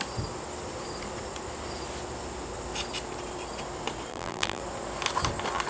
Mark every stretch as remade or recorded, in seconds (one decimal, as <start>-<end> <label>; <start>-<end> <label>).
0.0-4.1 recorded; 4.1-4.6 remade; 4.6-5.7 recorded